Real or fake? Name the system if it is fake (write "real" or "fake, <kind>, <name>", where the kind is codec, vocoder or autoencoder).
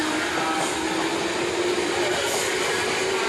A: real